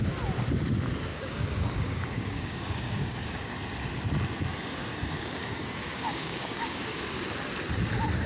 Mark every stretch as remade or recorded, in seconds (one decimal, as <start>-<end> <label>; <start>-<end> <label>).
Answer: 0.0-1.1 recorded; 1.1-3.5 remade; 3.5-4.9 recorded; 4.9-7.0 remade; 7.0-8.3 recorded